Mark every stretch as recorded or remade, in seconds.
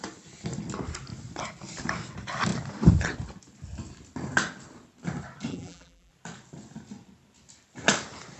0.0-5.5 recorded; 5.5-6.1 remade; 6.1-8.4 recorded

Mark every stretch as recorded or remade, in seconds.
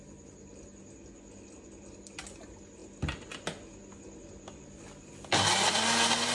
0.0-6.3 recorded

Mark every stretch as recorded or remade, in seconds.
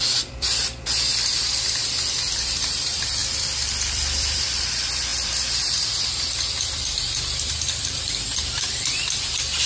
0.0-9.7 remade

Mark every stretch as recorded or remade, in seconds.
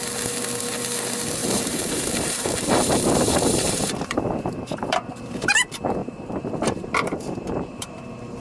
0.0-1.4 recorded; 1.4-5.5 remade; 5.5-6.0 recorded; 6.0-8.4 remade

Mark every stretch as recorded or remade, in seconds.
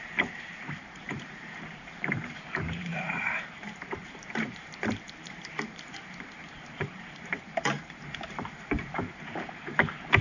0.0-9.6 remade; 9.6-10.2 recorded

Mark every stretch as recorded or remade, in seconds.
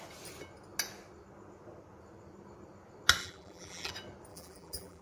0.0-3.2 recorded; 3.2-3.9 remade; 3.9-4.3 recorded; 4.3-5.0 remade